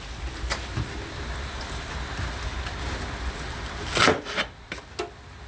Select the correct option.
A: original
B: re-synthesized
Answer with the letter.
A